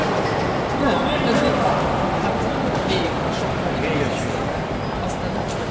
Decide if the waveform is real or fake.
real